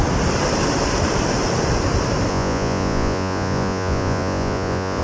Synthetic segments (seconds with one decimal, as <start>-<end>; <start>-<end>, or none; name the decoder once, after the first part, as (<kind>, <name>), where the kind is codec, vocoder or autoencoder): 2.3-5.0 (vocoder, Vocos)